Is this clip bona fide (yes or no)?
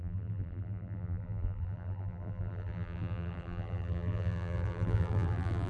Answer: no